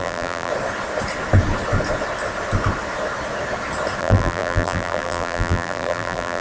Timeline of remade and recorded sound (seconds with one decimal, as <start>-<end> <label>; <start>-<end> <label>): 0.0-0.5 remade; 0.5-4.0 recorded; 4.0-6.4 remade